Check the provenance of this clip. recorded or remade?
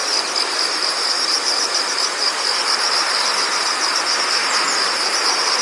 remade